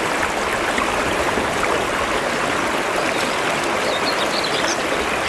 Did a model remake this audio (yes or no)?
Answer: no